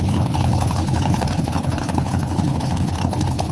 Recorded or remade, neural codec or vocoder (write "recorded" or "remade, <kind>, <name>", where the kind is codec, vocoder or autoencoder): remade, codec, HILCodec